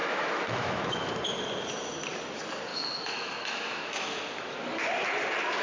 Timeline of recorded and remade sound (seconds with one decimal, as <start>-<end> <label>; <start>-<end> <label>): 0.0-1.1 remade; 1.1-2.7 recorded; 2.7-4.2 remade; 4.2-5.6 recorded

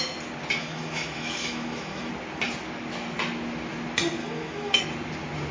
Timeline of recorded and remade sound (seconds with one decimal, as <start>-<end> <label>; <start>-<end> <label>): 0.0-0.6 recorded; 0.6-2.1 remade; 2.1-4.2 recorded; 4.2-4.8 remade; 4.8-5.5 recorded

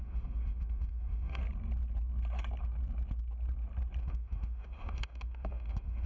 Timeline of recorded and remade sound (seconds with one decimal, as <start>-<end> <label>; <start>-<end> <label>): 0.0-1.4 remade; 1.4-4.0 recorded; 4.0-6.1 remade

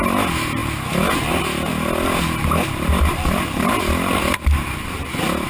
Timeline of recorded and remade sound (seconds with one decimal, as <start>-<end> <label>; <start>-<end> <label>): 0.0-5.5 recorded

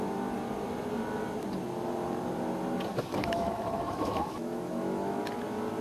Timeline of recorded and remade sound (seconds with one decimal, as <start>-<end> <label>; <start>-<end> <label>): 0.0-2.9 recorded; 2.9-5.2 remade; 5.2-5.8 recorded